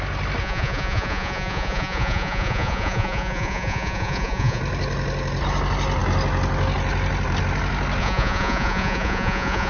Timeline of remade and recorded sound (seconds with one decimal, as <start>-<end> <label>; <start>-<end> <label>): 0.0-0.4 recorded; 0.4-4.6 remade; 4.6-8.0 recorded; 8.0-9.7 remade